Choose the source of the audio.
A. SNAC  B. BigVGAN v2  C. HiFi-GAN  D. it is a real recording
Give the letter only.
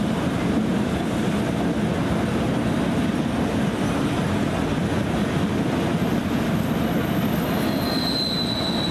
D